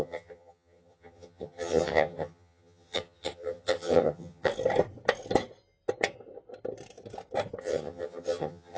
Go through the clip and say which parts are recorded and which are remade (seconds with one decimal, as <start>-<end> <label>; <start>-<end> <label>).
0.0-4.5 remade; 4.5-7.6 recorded; 7.6-8.8 remade